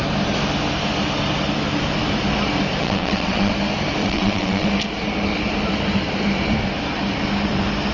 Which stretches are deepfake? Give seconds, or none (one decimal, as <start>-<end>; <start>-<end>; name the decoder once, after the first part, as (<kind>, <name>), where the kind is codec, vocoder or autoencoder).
2.8-3.5 (vocoder, WaveNeXt); 4.0-4.7